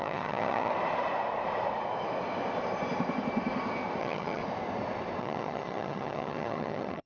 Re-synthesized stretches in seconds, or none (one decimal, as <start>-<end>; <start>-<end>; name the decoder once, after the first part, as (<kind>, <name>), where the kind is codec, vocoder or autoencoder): 0.0-0.7 (vocoder, HiFi-GAN); 4.0-4.4; 5.2-7.1